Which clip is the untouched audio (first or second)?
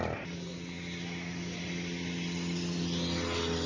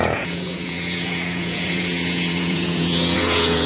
first